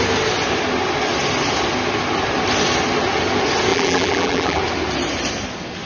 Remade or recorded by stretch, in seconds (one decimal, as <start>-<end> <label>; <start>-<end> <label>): 0.0-3.7 recorded; 3.7-4.6 remade; 4.6-5.9 recorded